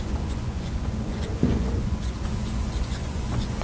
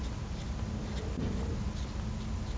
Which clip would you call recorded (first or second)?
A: second